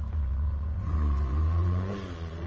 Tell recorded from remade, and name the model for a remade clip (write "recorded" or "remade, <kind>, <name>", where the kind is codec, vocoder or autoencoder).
remade, vocoder, Vocos